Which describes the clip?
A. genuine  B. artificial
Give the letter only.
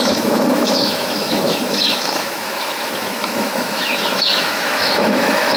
B